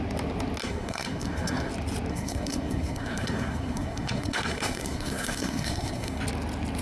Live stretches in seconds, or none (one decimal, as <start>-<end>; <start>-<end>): 0.0-0.6; 1.7-2.1; 6.2-6.8